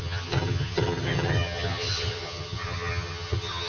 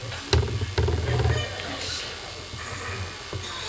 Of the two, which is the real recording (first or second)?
second